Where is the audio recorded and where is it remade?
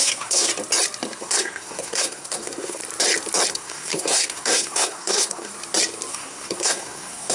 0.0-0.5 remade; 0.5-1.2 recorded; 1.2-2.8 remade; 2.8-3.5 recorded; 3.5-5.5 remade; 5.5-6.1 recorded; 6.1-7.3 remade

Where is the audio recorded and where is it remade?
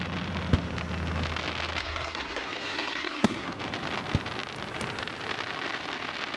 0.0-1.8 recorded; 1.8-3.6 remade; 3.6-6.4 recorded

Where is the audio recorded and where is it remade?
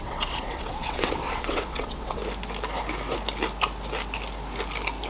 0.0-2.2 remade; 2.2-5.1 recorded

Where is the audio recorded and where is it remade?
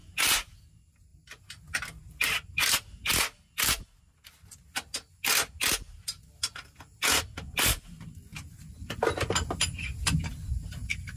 0.0-0.6 remade; 0.6-8.3 recorded; 8.3-9.6 remade; 9.6-11.2 recorded